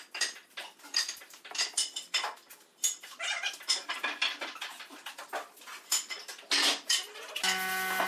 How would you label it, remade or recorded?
recorded